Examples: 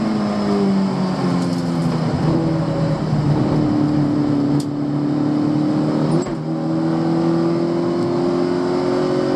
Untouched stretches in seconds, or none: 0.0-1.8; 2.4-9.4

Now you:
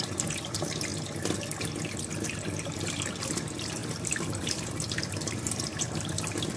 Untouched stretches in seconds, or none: 0.9-2.6

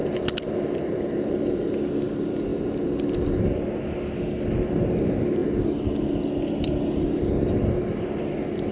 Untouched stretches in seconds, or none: 1.6-8.7

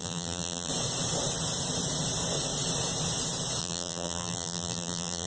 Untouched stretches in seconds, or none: 0.7-3.6

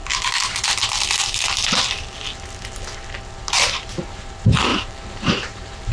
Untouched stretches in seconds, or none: 0.0-3.5

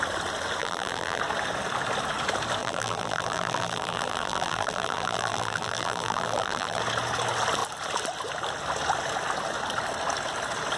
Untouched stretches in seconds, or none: 0.0-0.6; 1.2-2.6; 6.8-10.8

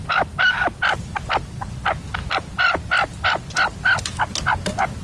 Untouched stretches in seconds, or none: 0.0-0.5; 1.1-2.2; 4.2-5.0

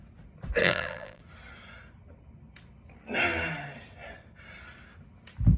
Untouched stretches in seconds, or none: 0.0-0.6; 1.2-5.6